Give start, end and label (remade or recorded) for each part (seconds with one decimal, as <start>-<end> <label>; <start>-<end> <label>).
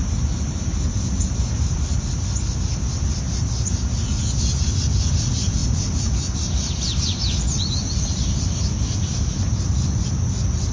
0.0-0.9 recorded; 0.9-2.0 remade; 2.0-10.7 recorded